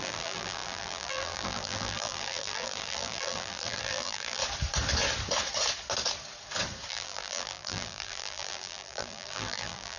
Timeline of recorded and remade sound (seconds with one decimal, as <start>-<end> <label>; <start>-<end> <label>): 0.0-4.4 remade; 4.4-6.9 recorded; 6.9-10.0 remade